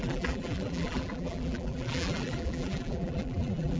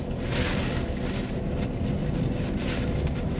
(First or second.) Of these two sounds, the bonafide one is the second